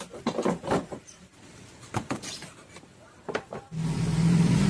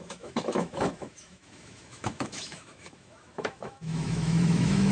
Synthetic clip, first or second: second